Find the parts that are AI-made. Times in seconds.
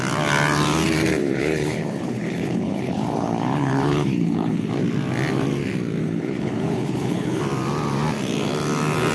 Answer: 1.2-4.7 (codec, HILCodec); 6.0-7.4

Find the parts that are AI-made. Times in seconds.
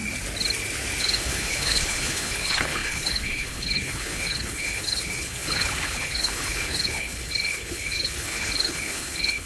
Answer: 1.0-9.5 (codec, HILCodec)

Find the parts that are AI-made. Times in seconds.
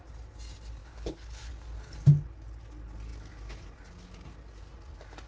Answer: 0.8-1.5 (codec, HILCodec)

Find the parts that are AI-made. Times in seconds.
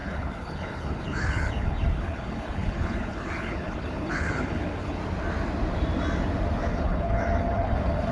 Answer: 0.0-5.0 (codec, HILCodec); 6.7-8.1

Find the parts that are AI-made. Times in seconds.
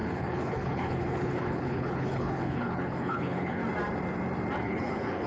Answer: 0.0-3.6 (codec, HILCodec); 4.6-5.3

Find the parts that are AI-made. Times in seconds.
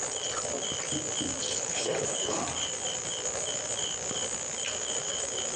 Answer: 1.4-2.4 (codec, HILCodec)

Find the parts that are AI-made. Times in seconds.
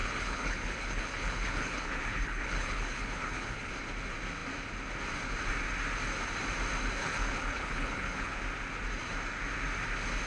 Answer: 0.0-3.7 (codec, HILCodec); 7.0-8.4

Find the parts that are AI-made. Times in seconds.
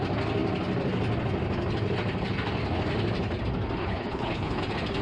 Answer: 3.8-4.6 (codec, HILCodec)